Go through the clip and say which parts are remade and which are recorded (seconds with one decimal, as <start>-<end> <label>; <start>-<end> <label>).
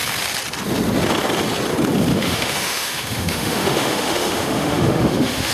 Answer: 0.0-2.1 recorded; 2.1-5.5 remade